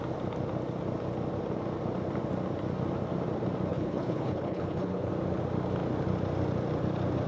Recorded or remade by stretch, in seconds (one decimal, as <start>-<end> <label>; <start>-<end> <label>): 0.0-3.7 recorded; 3.7-5.1 remade; 5.1-7.3 recorded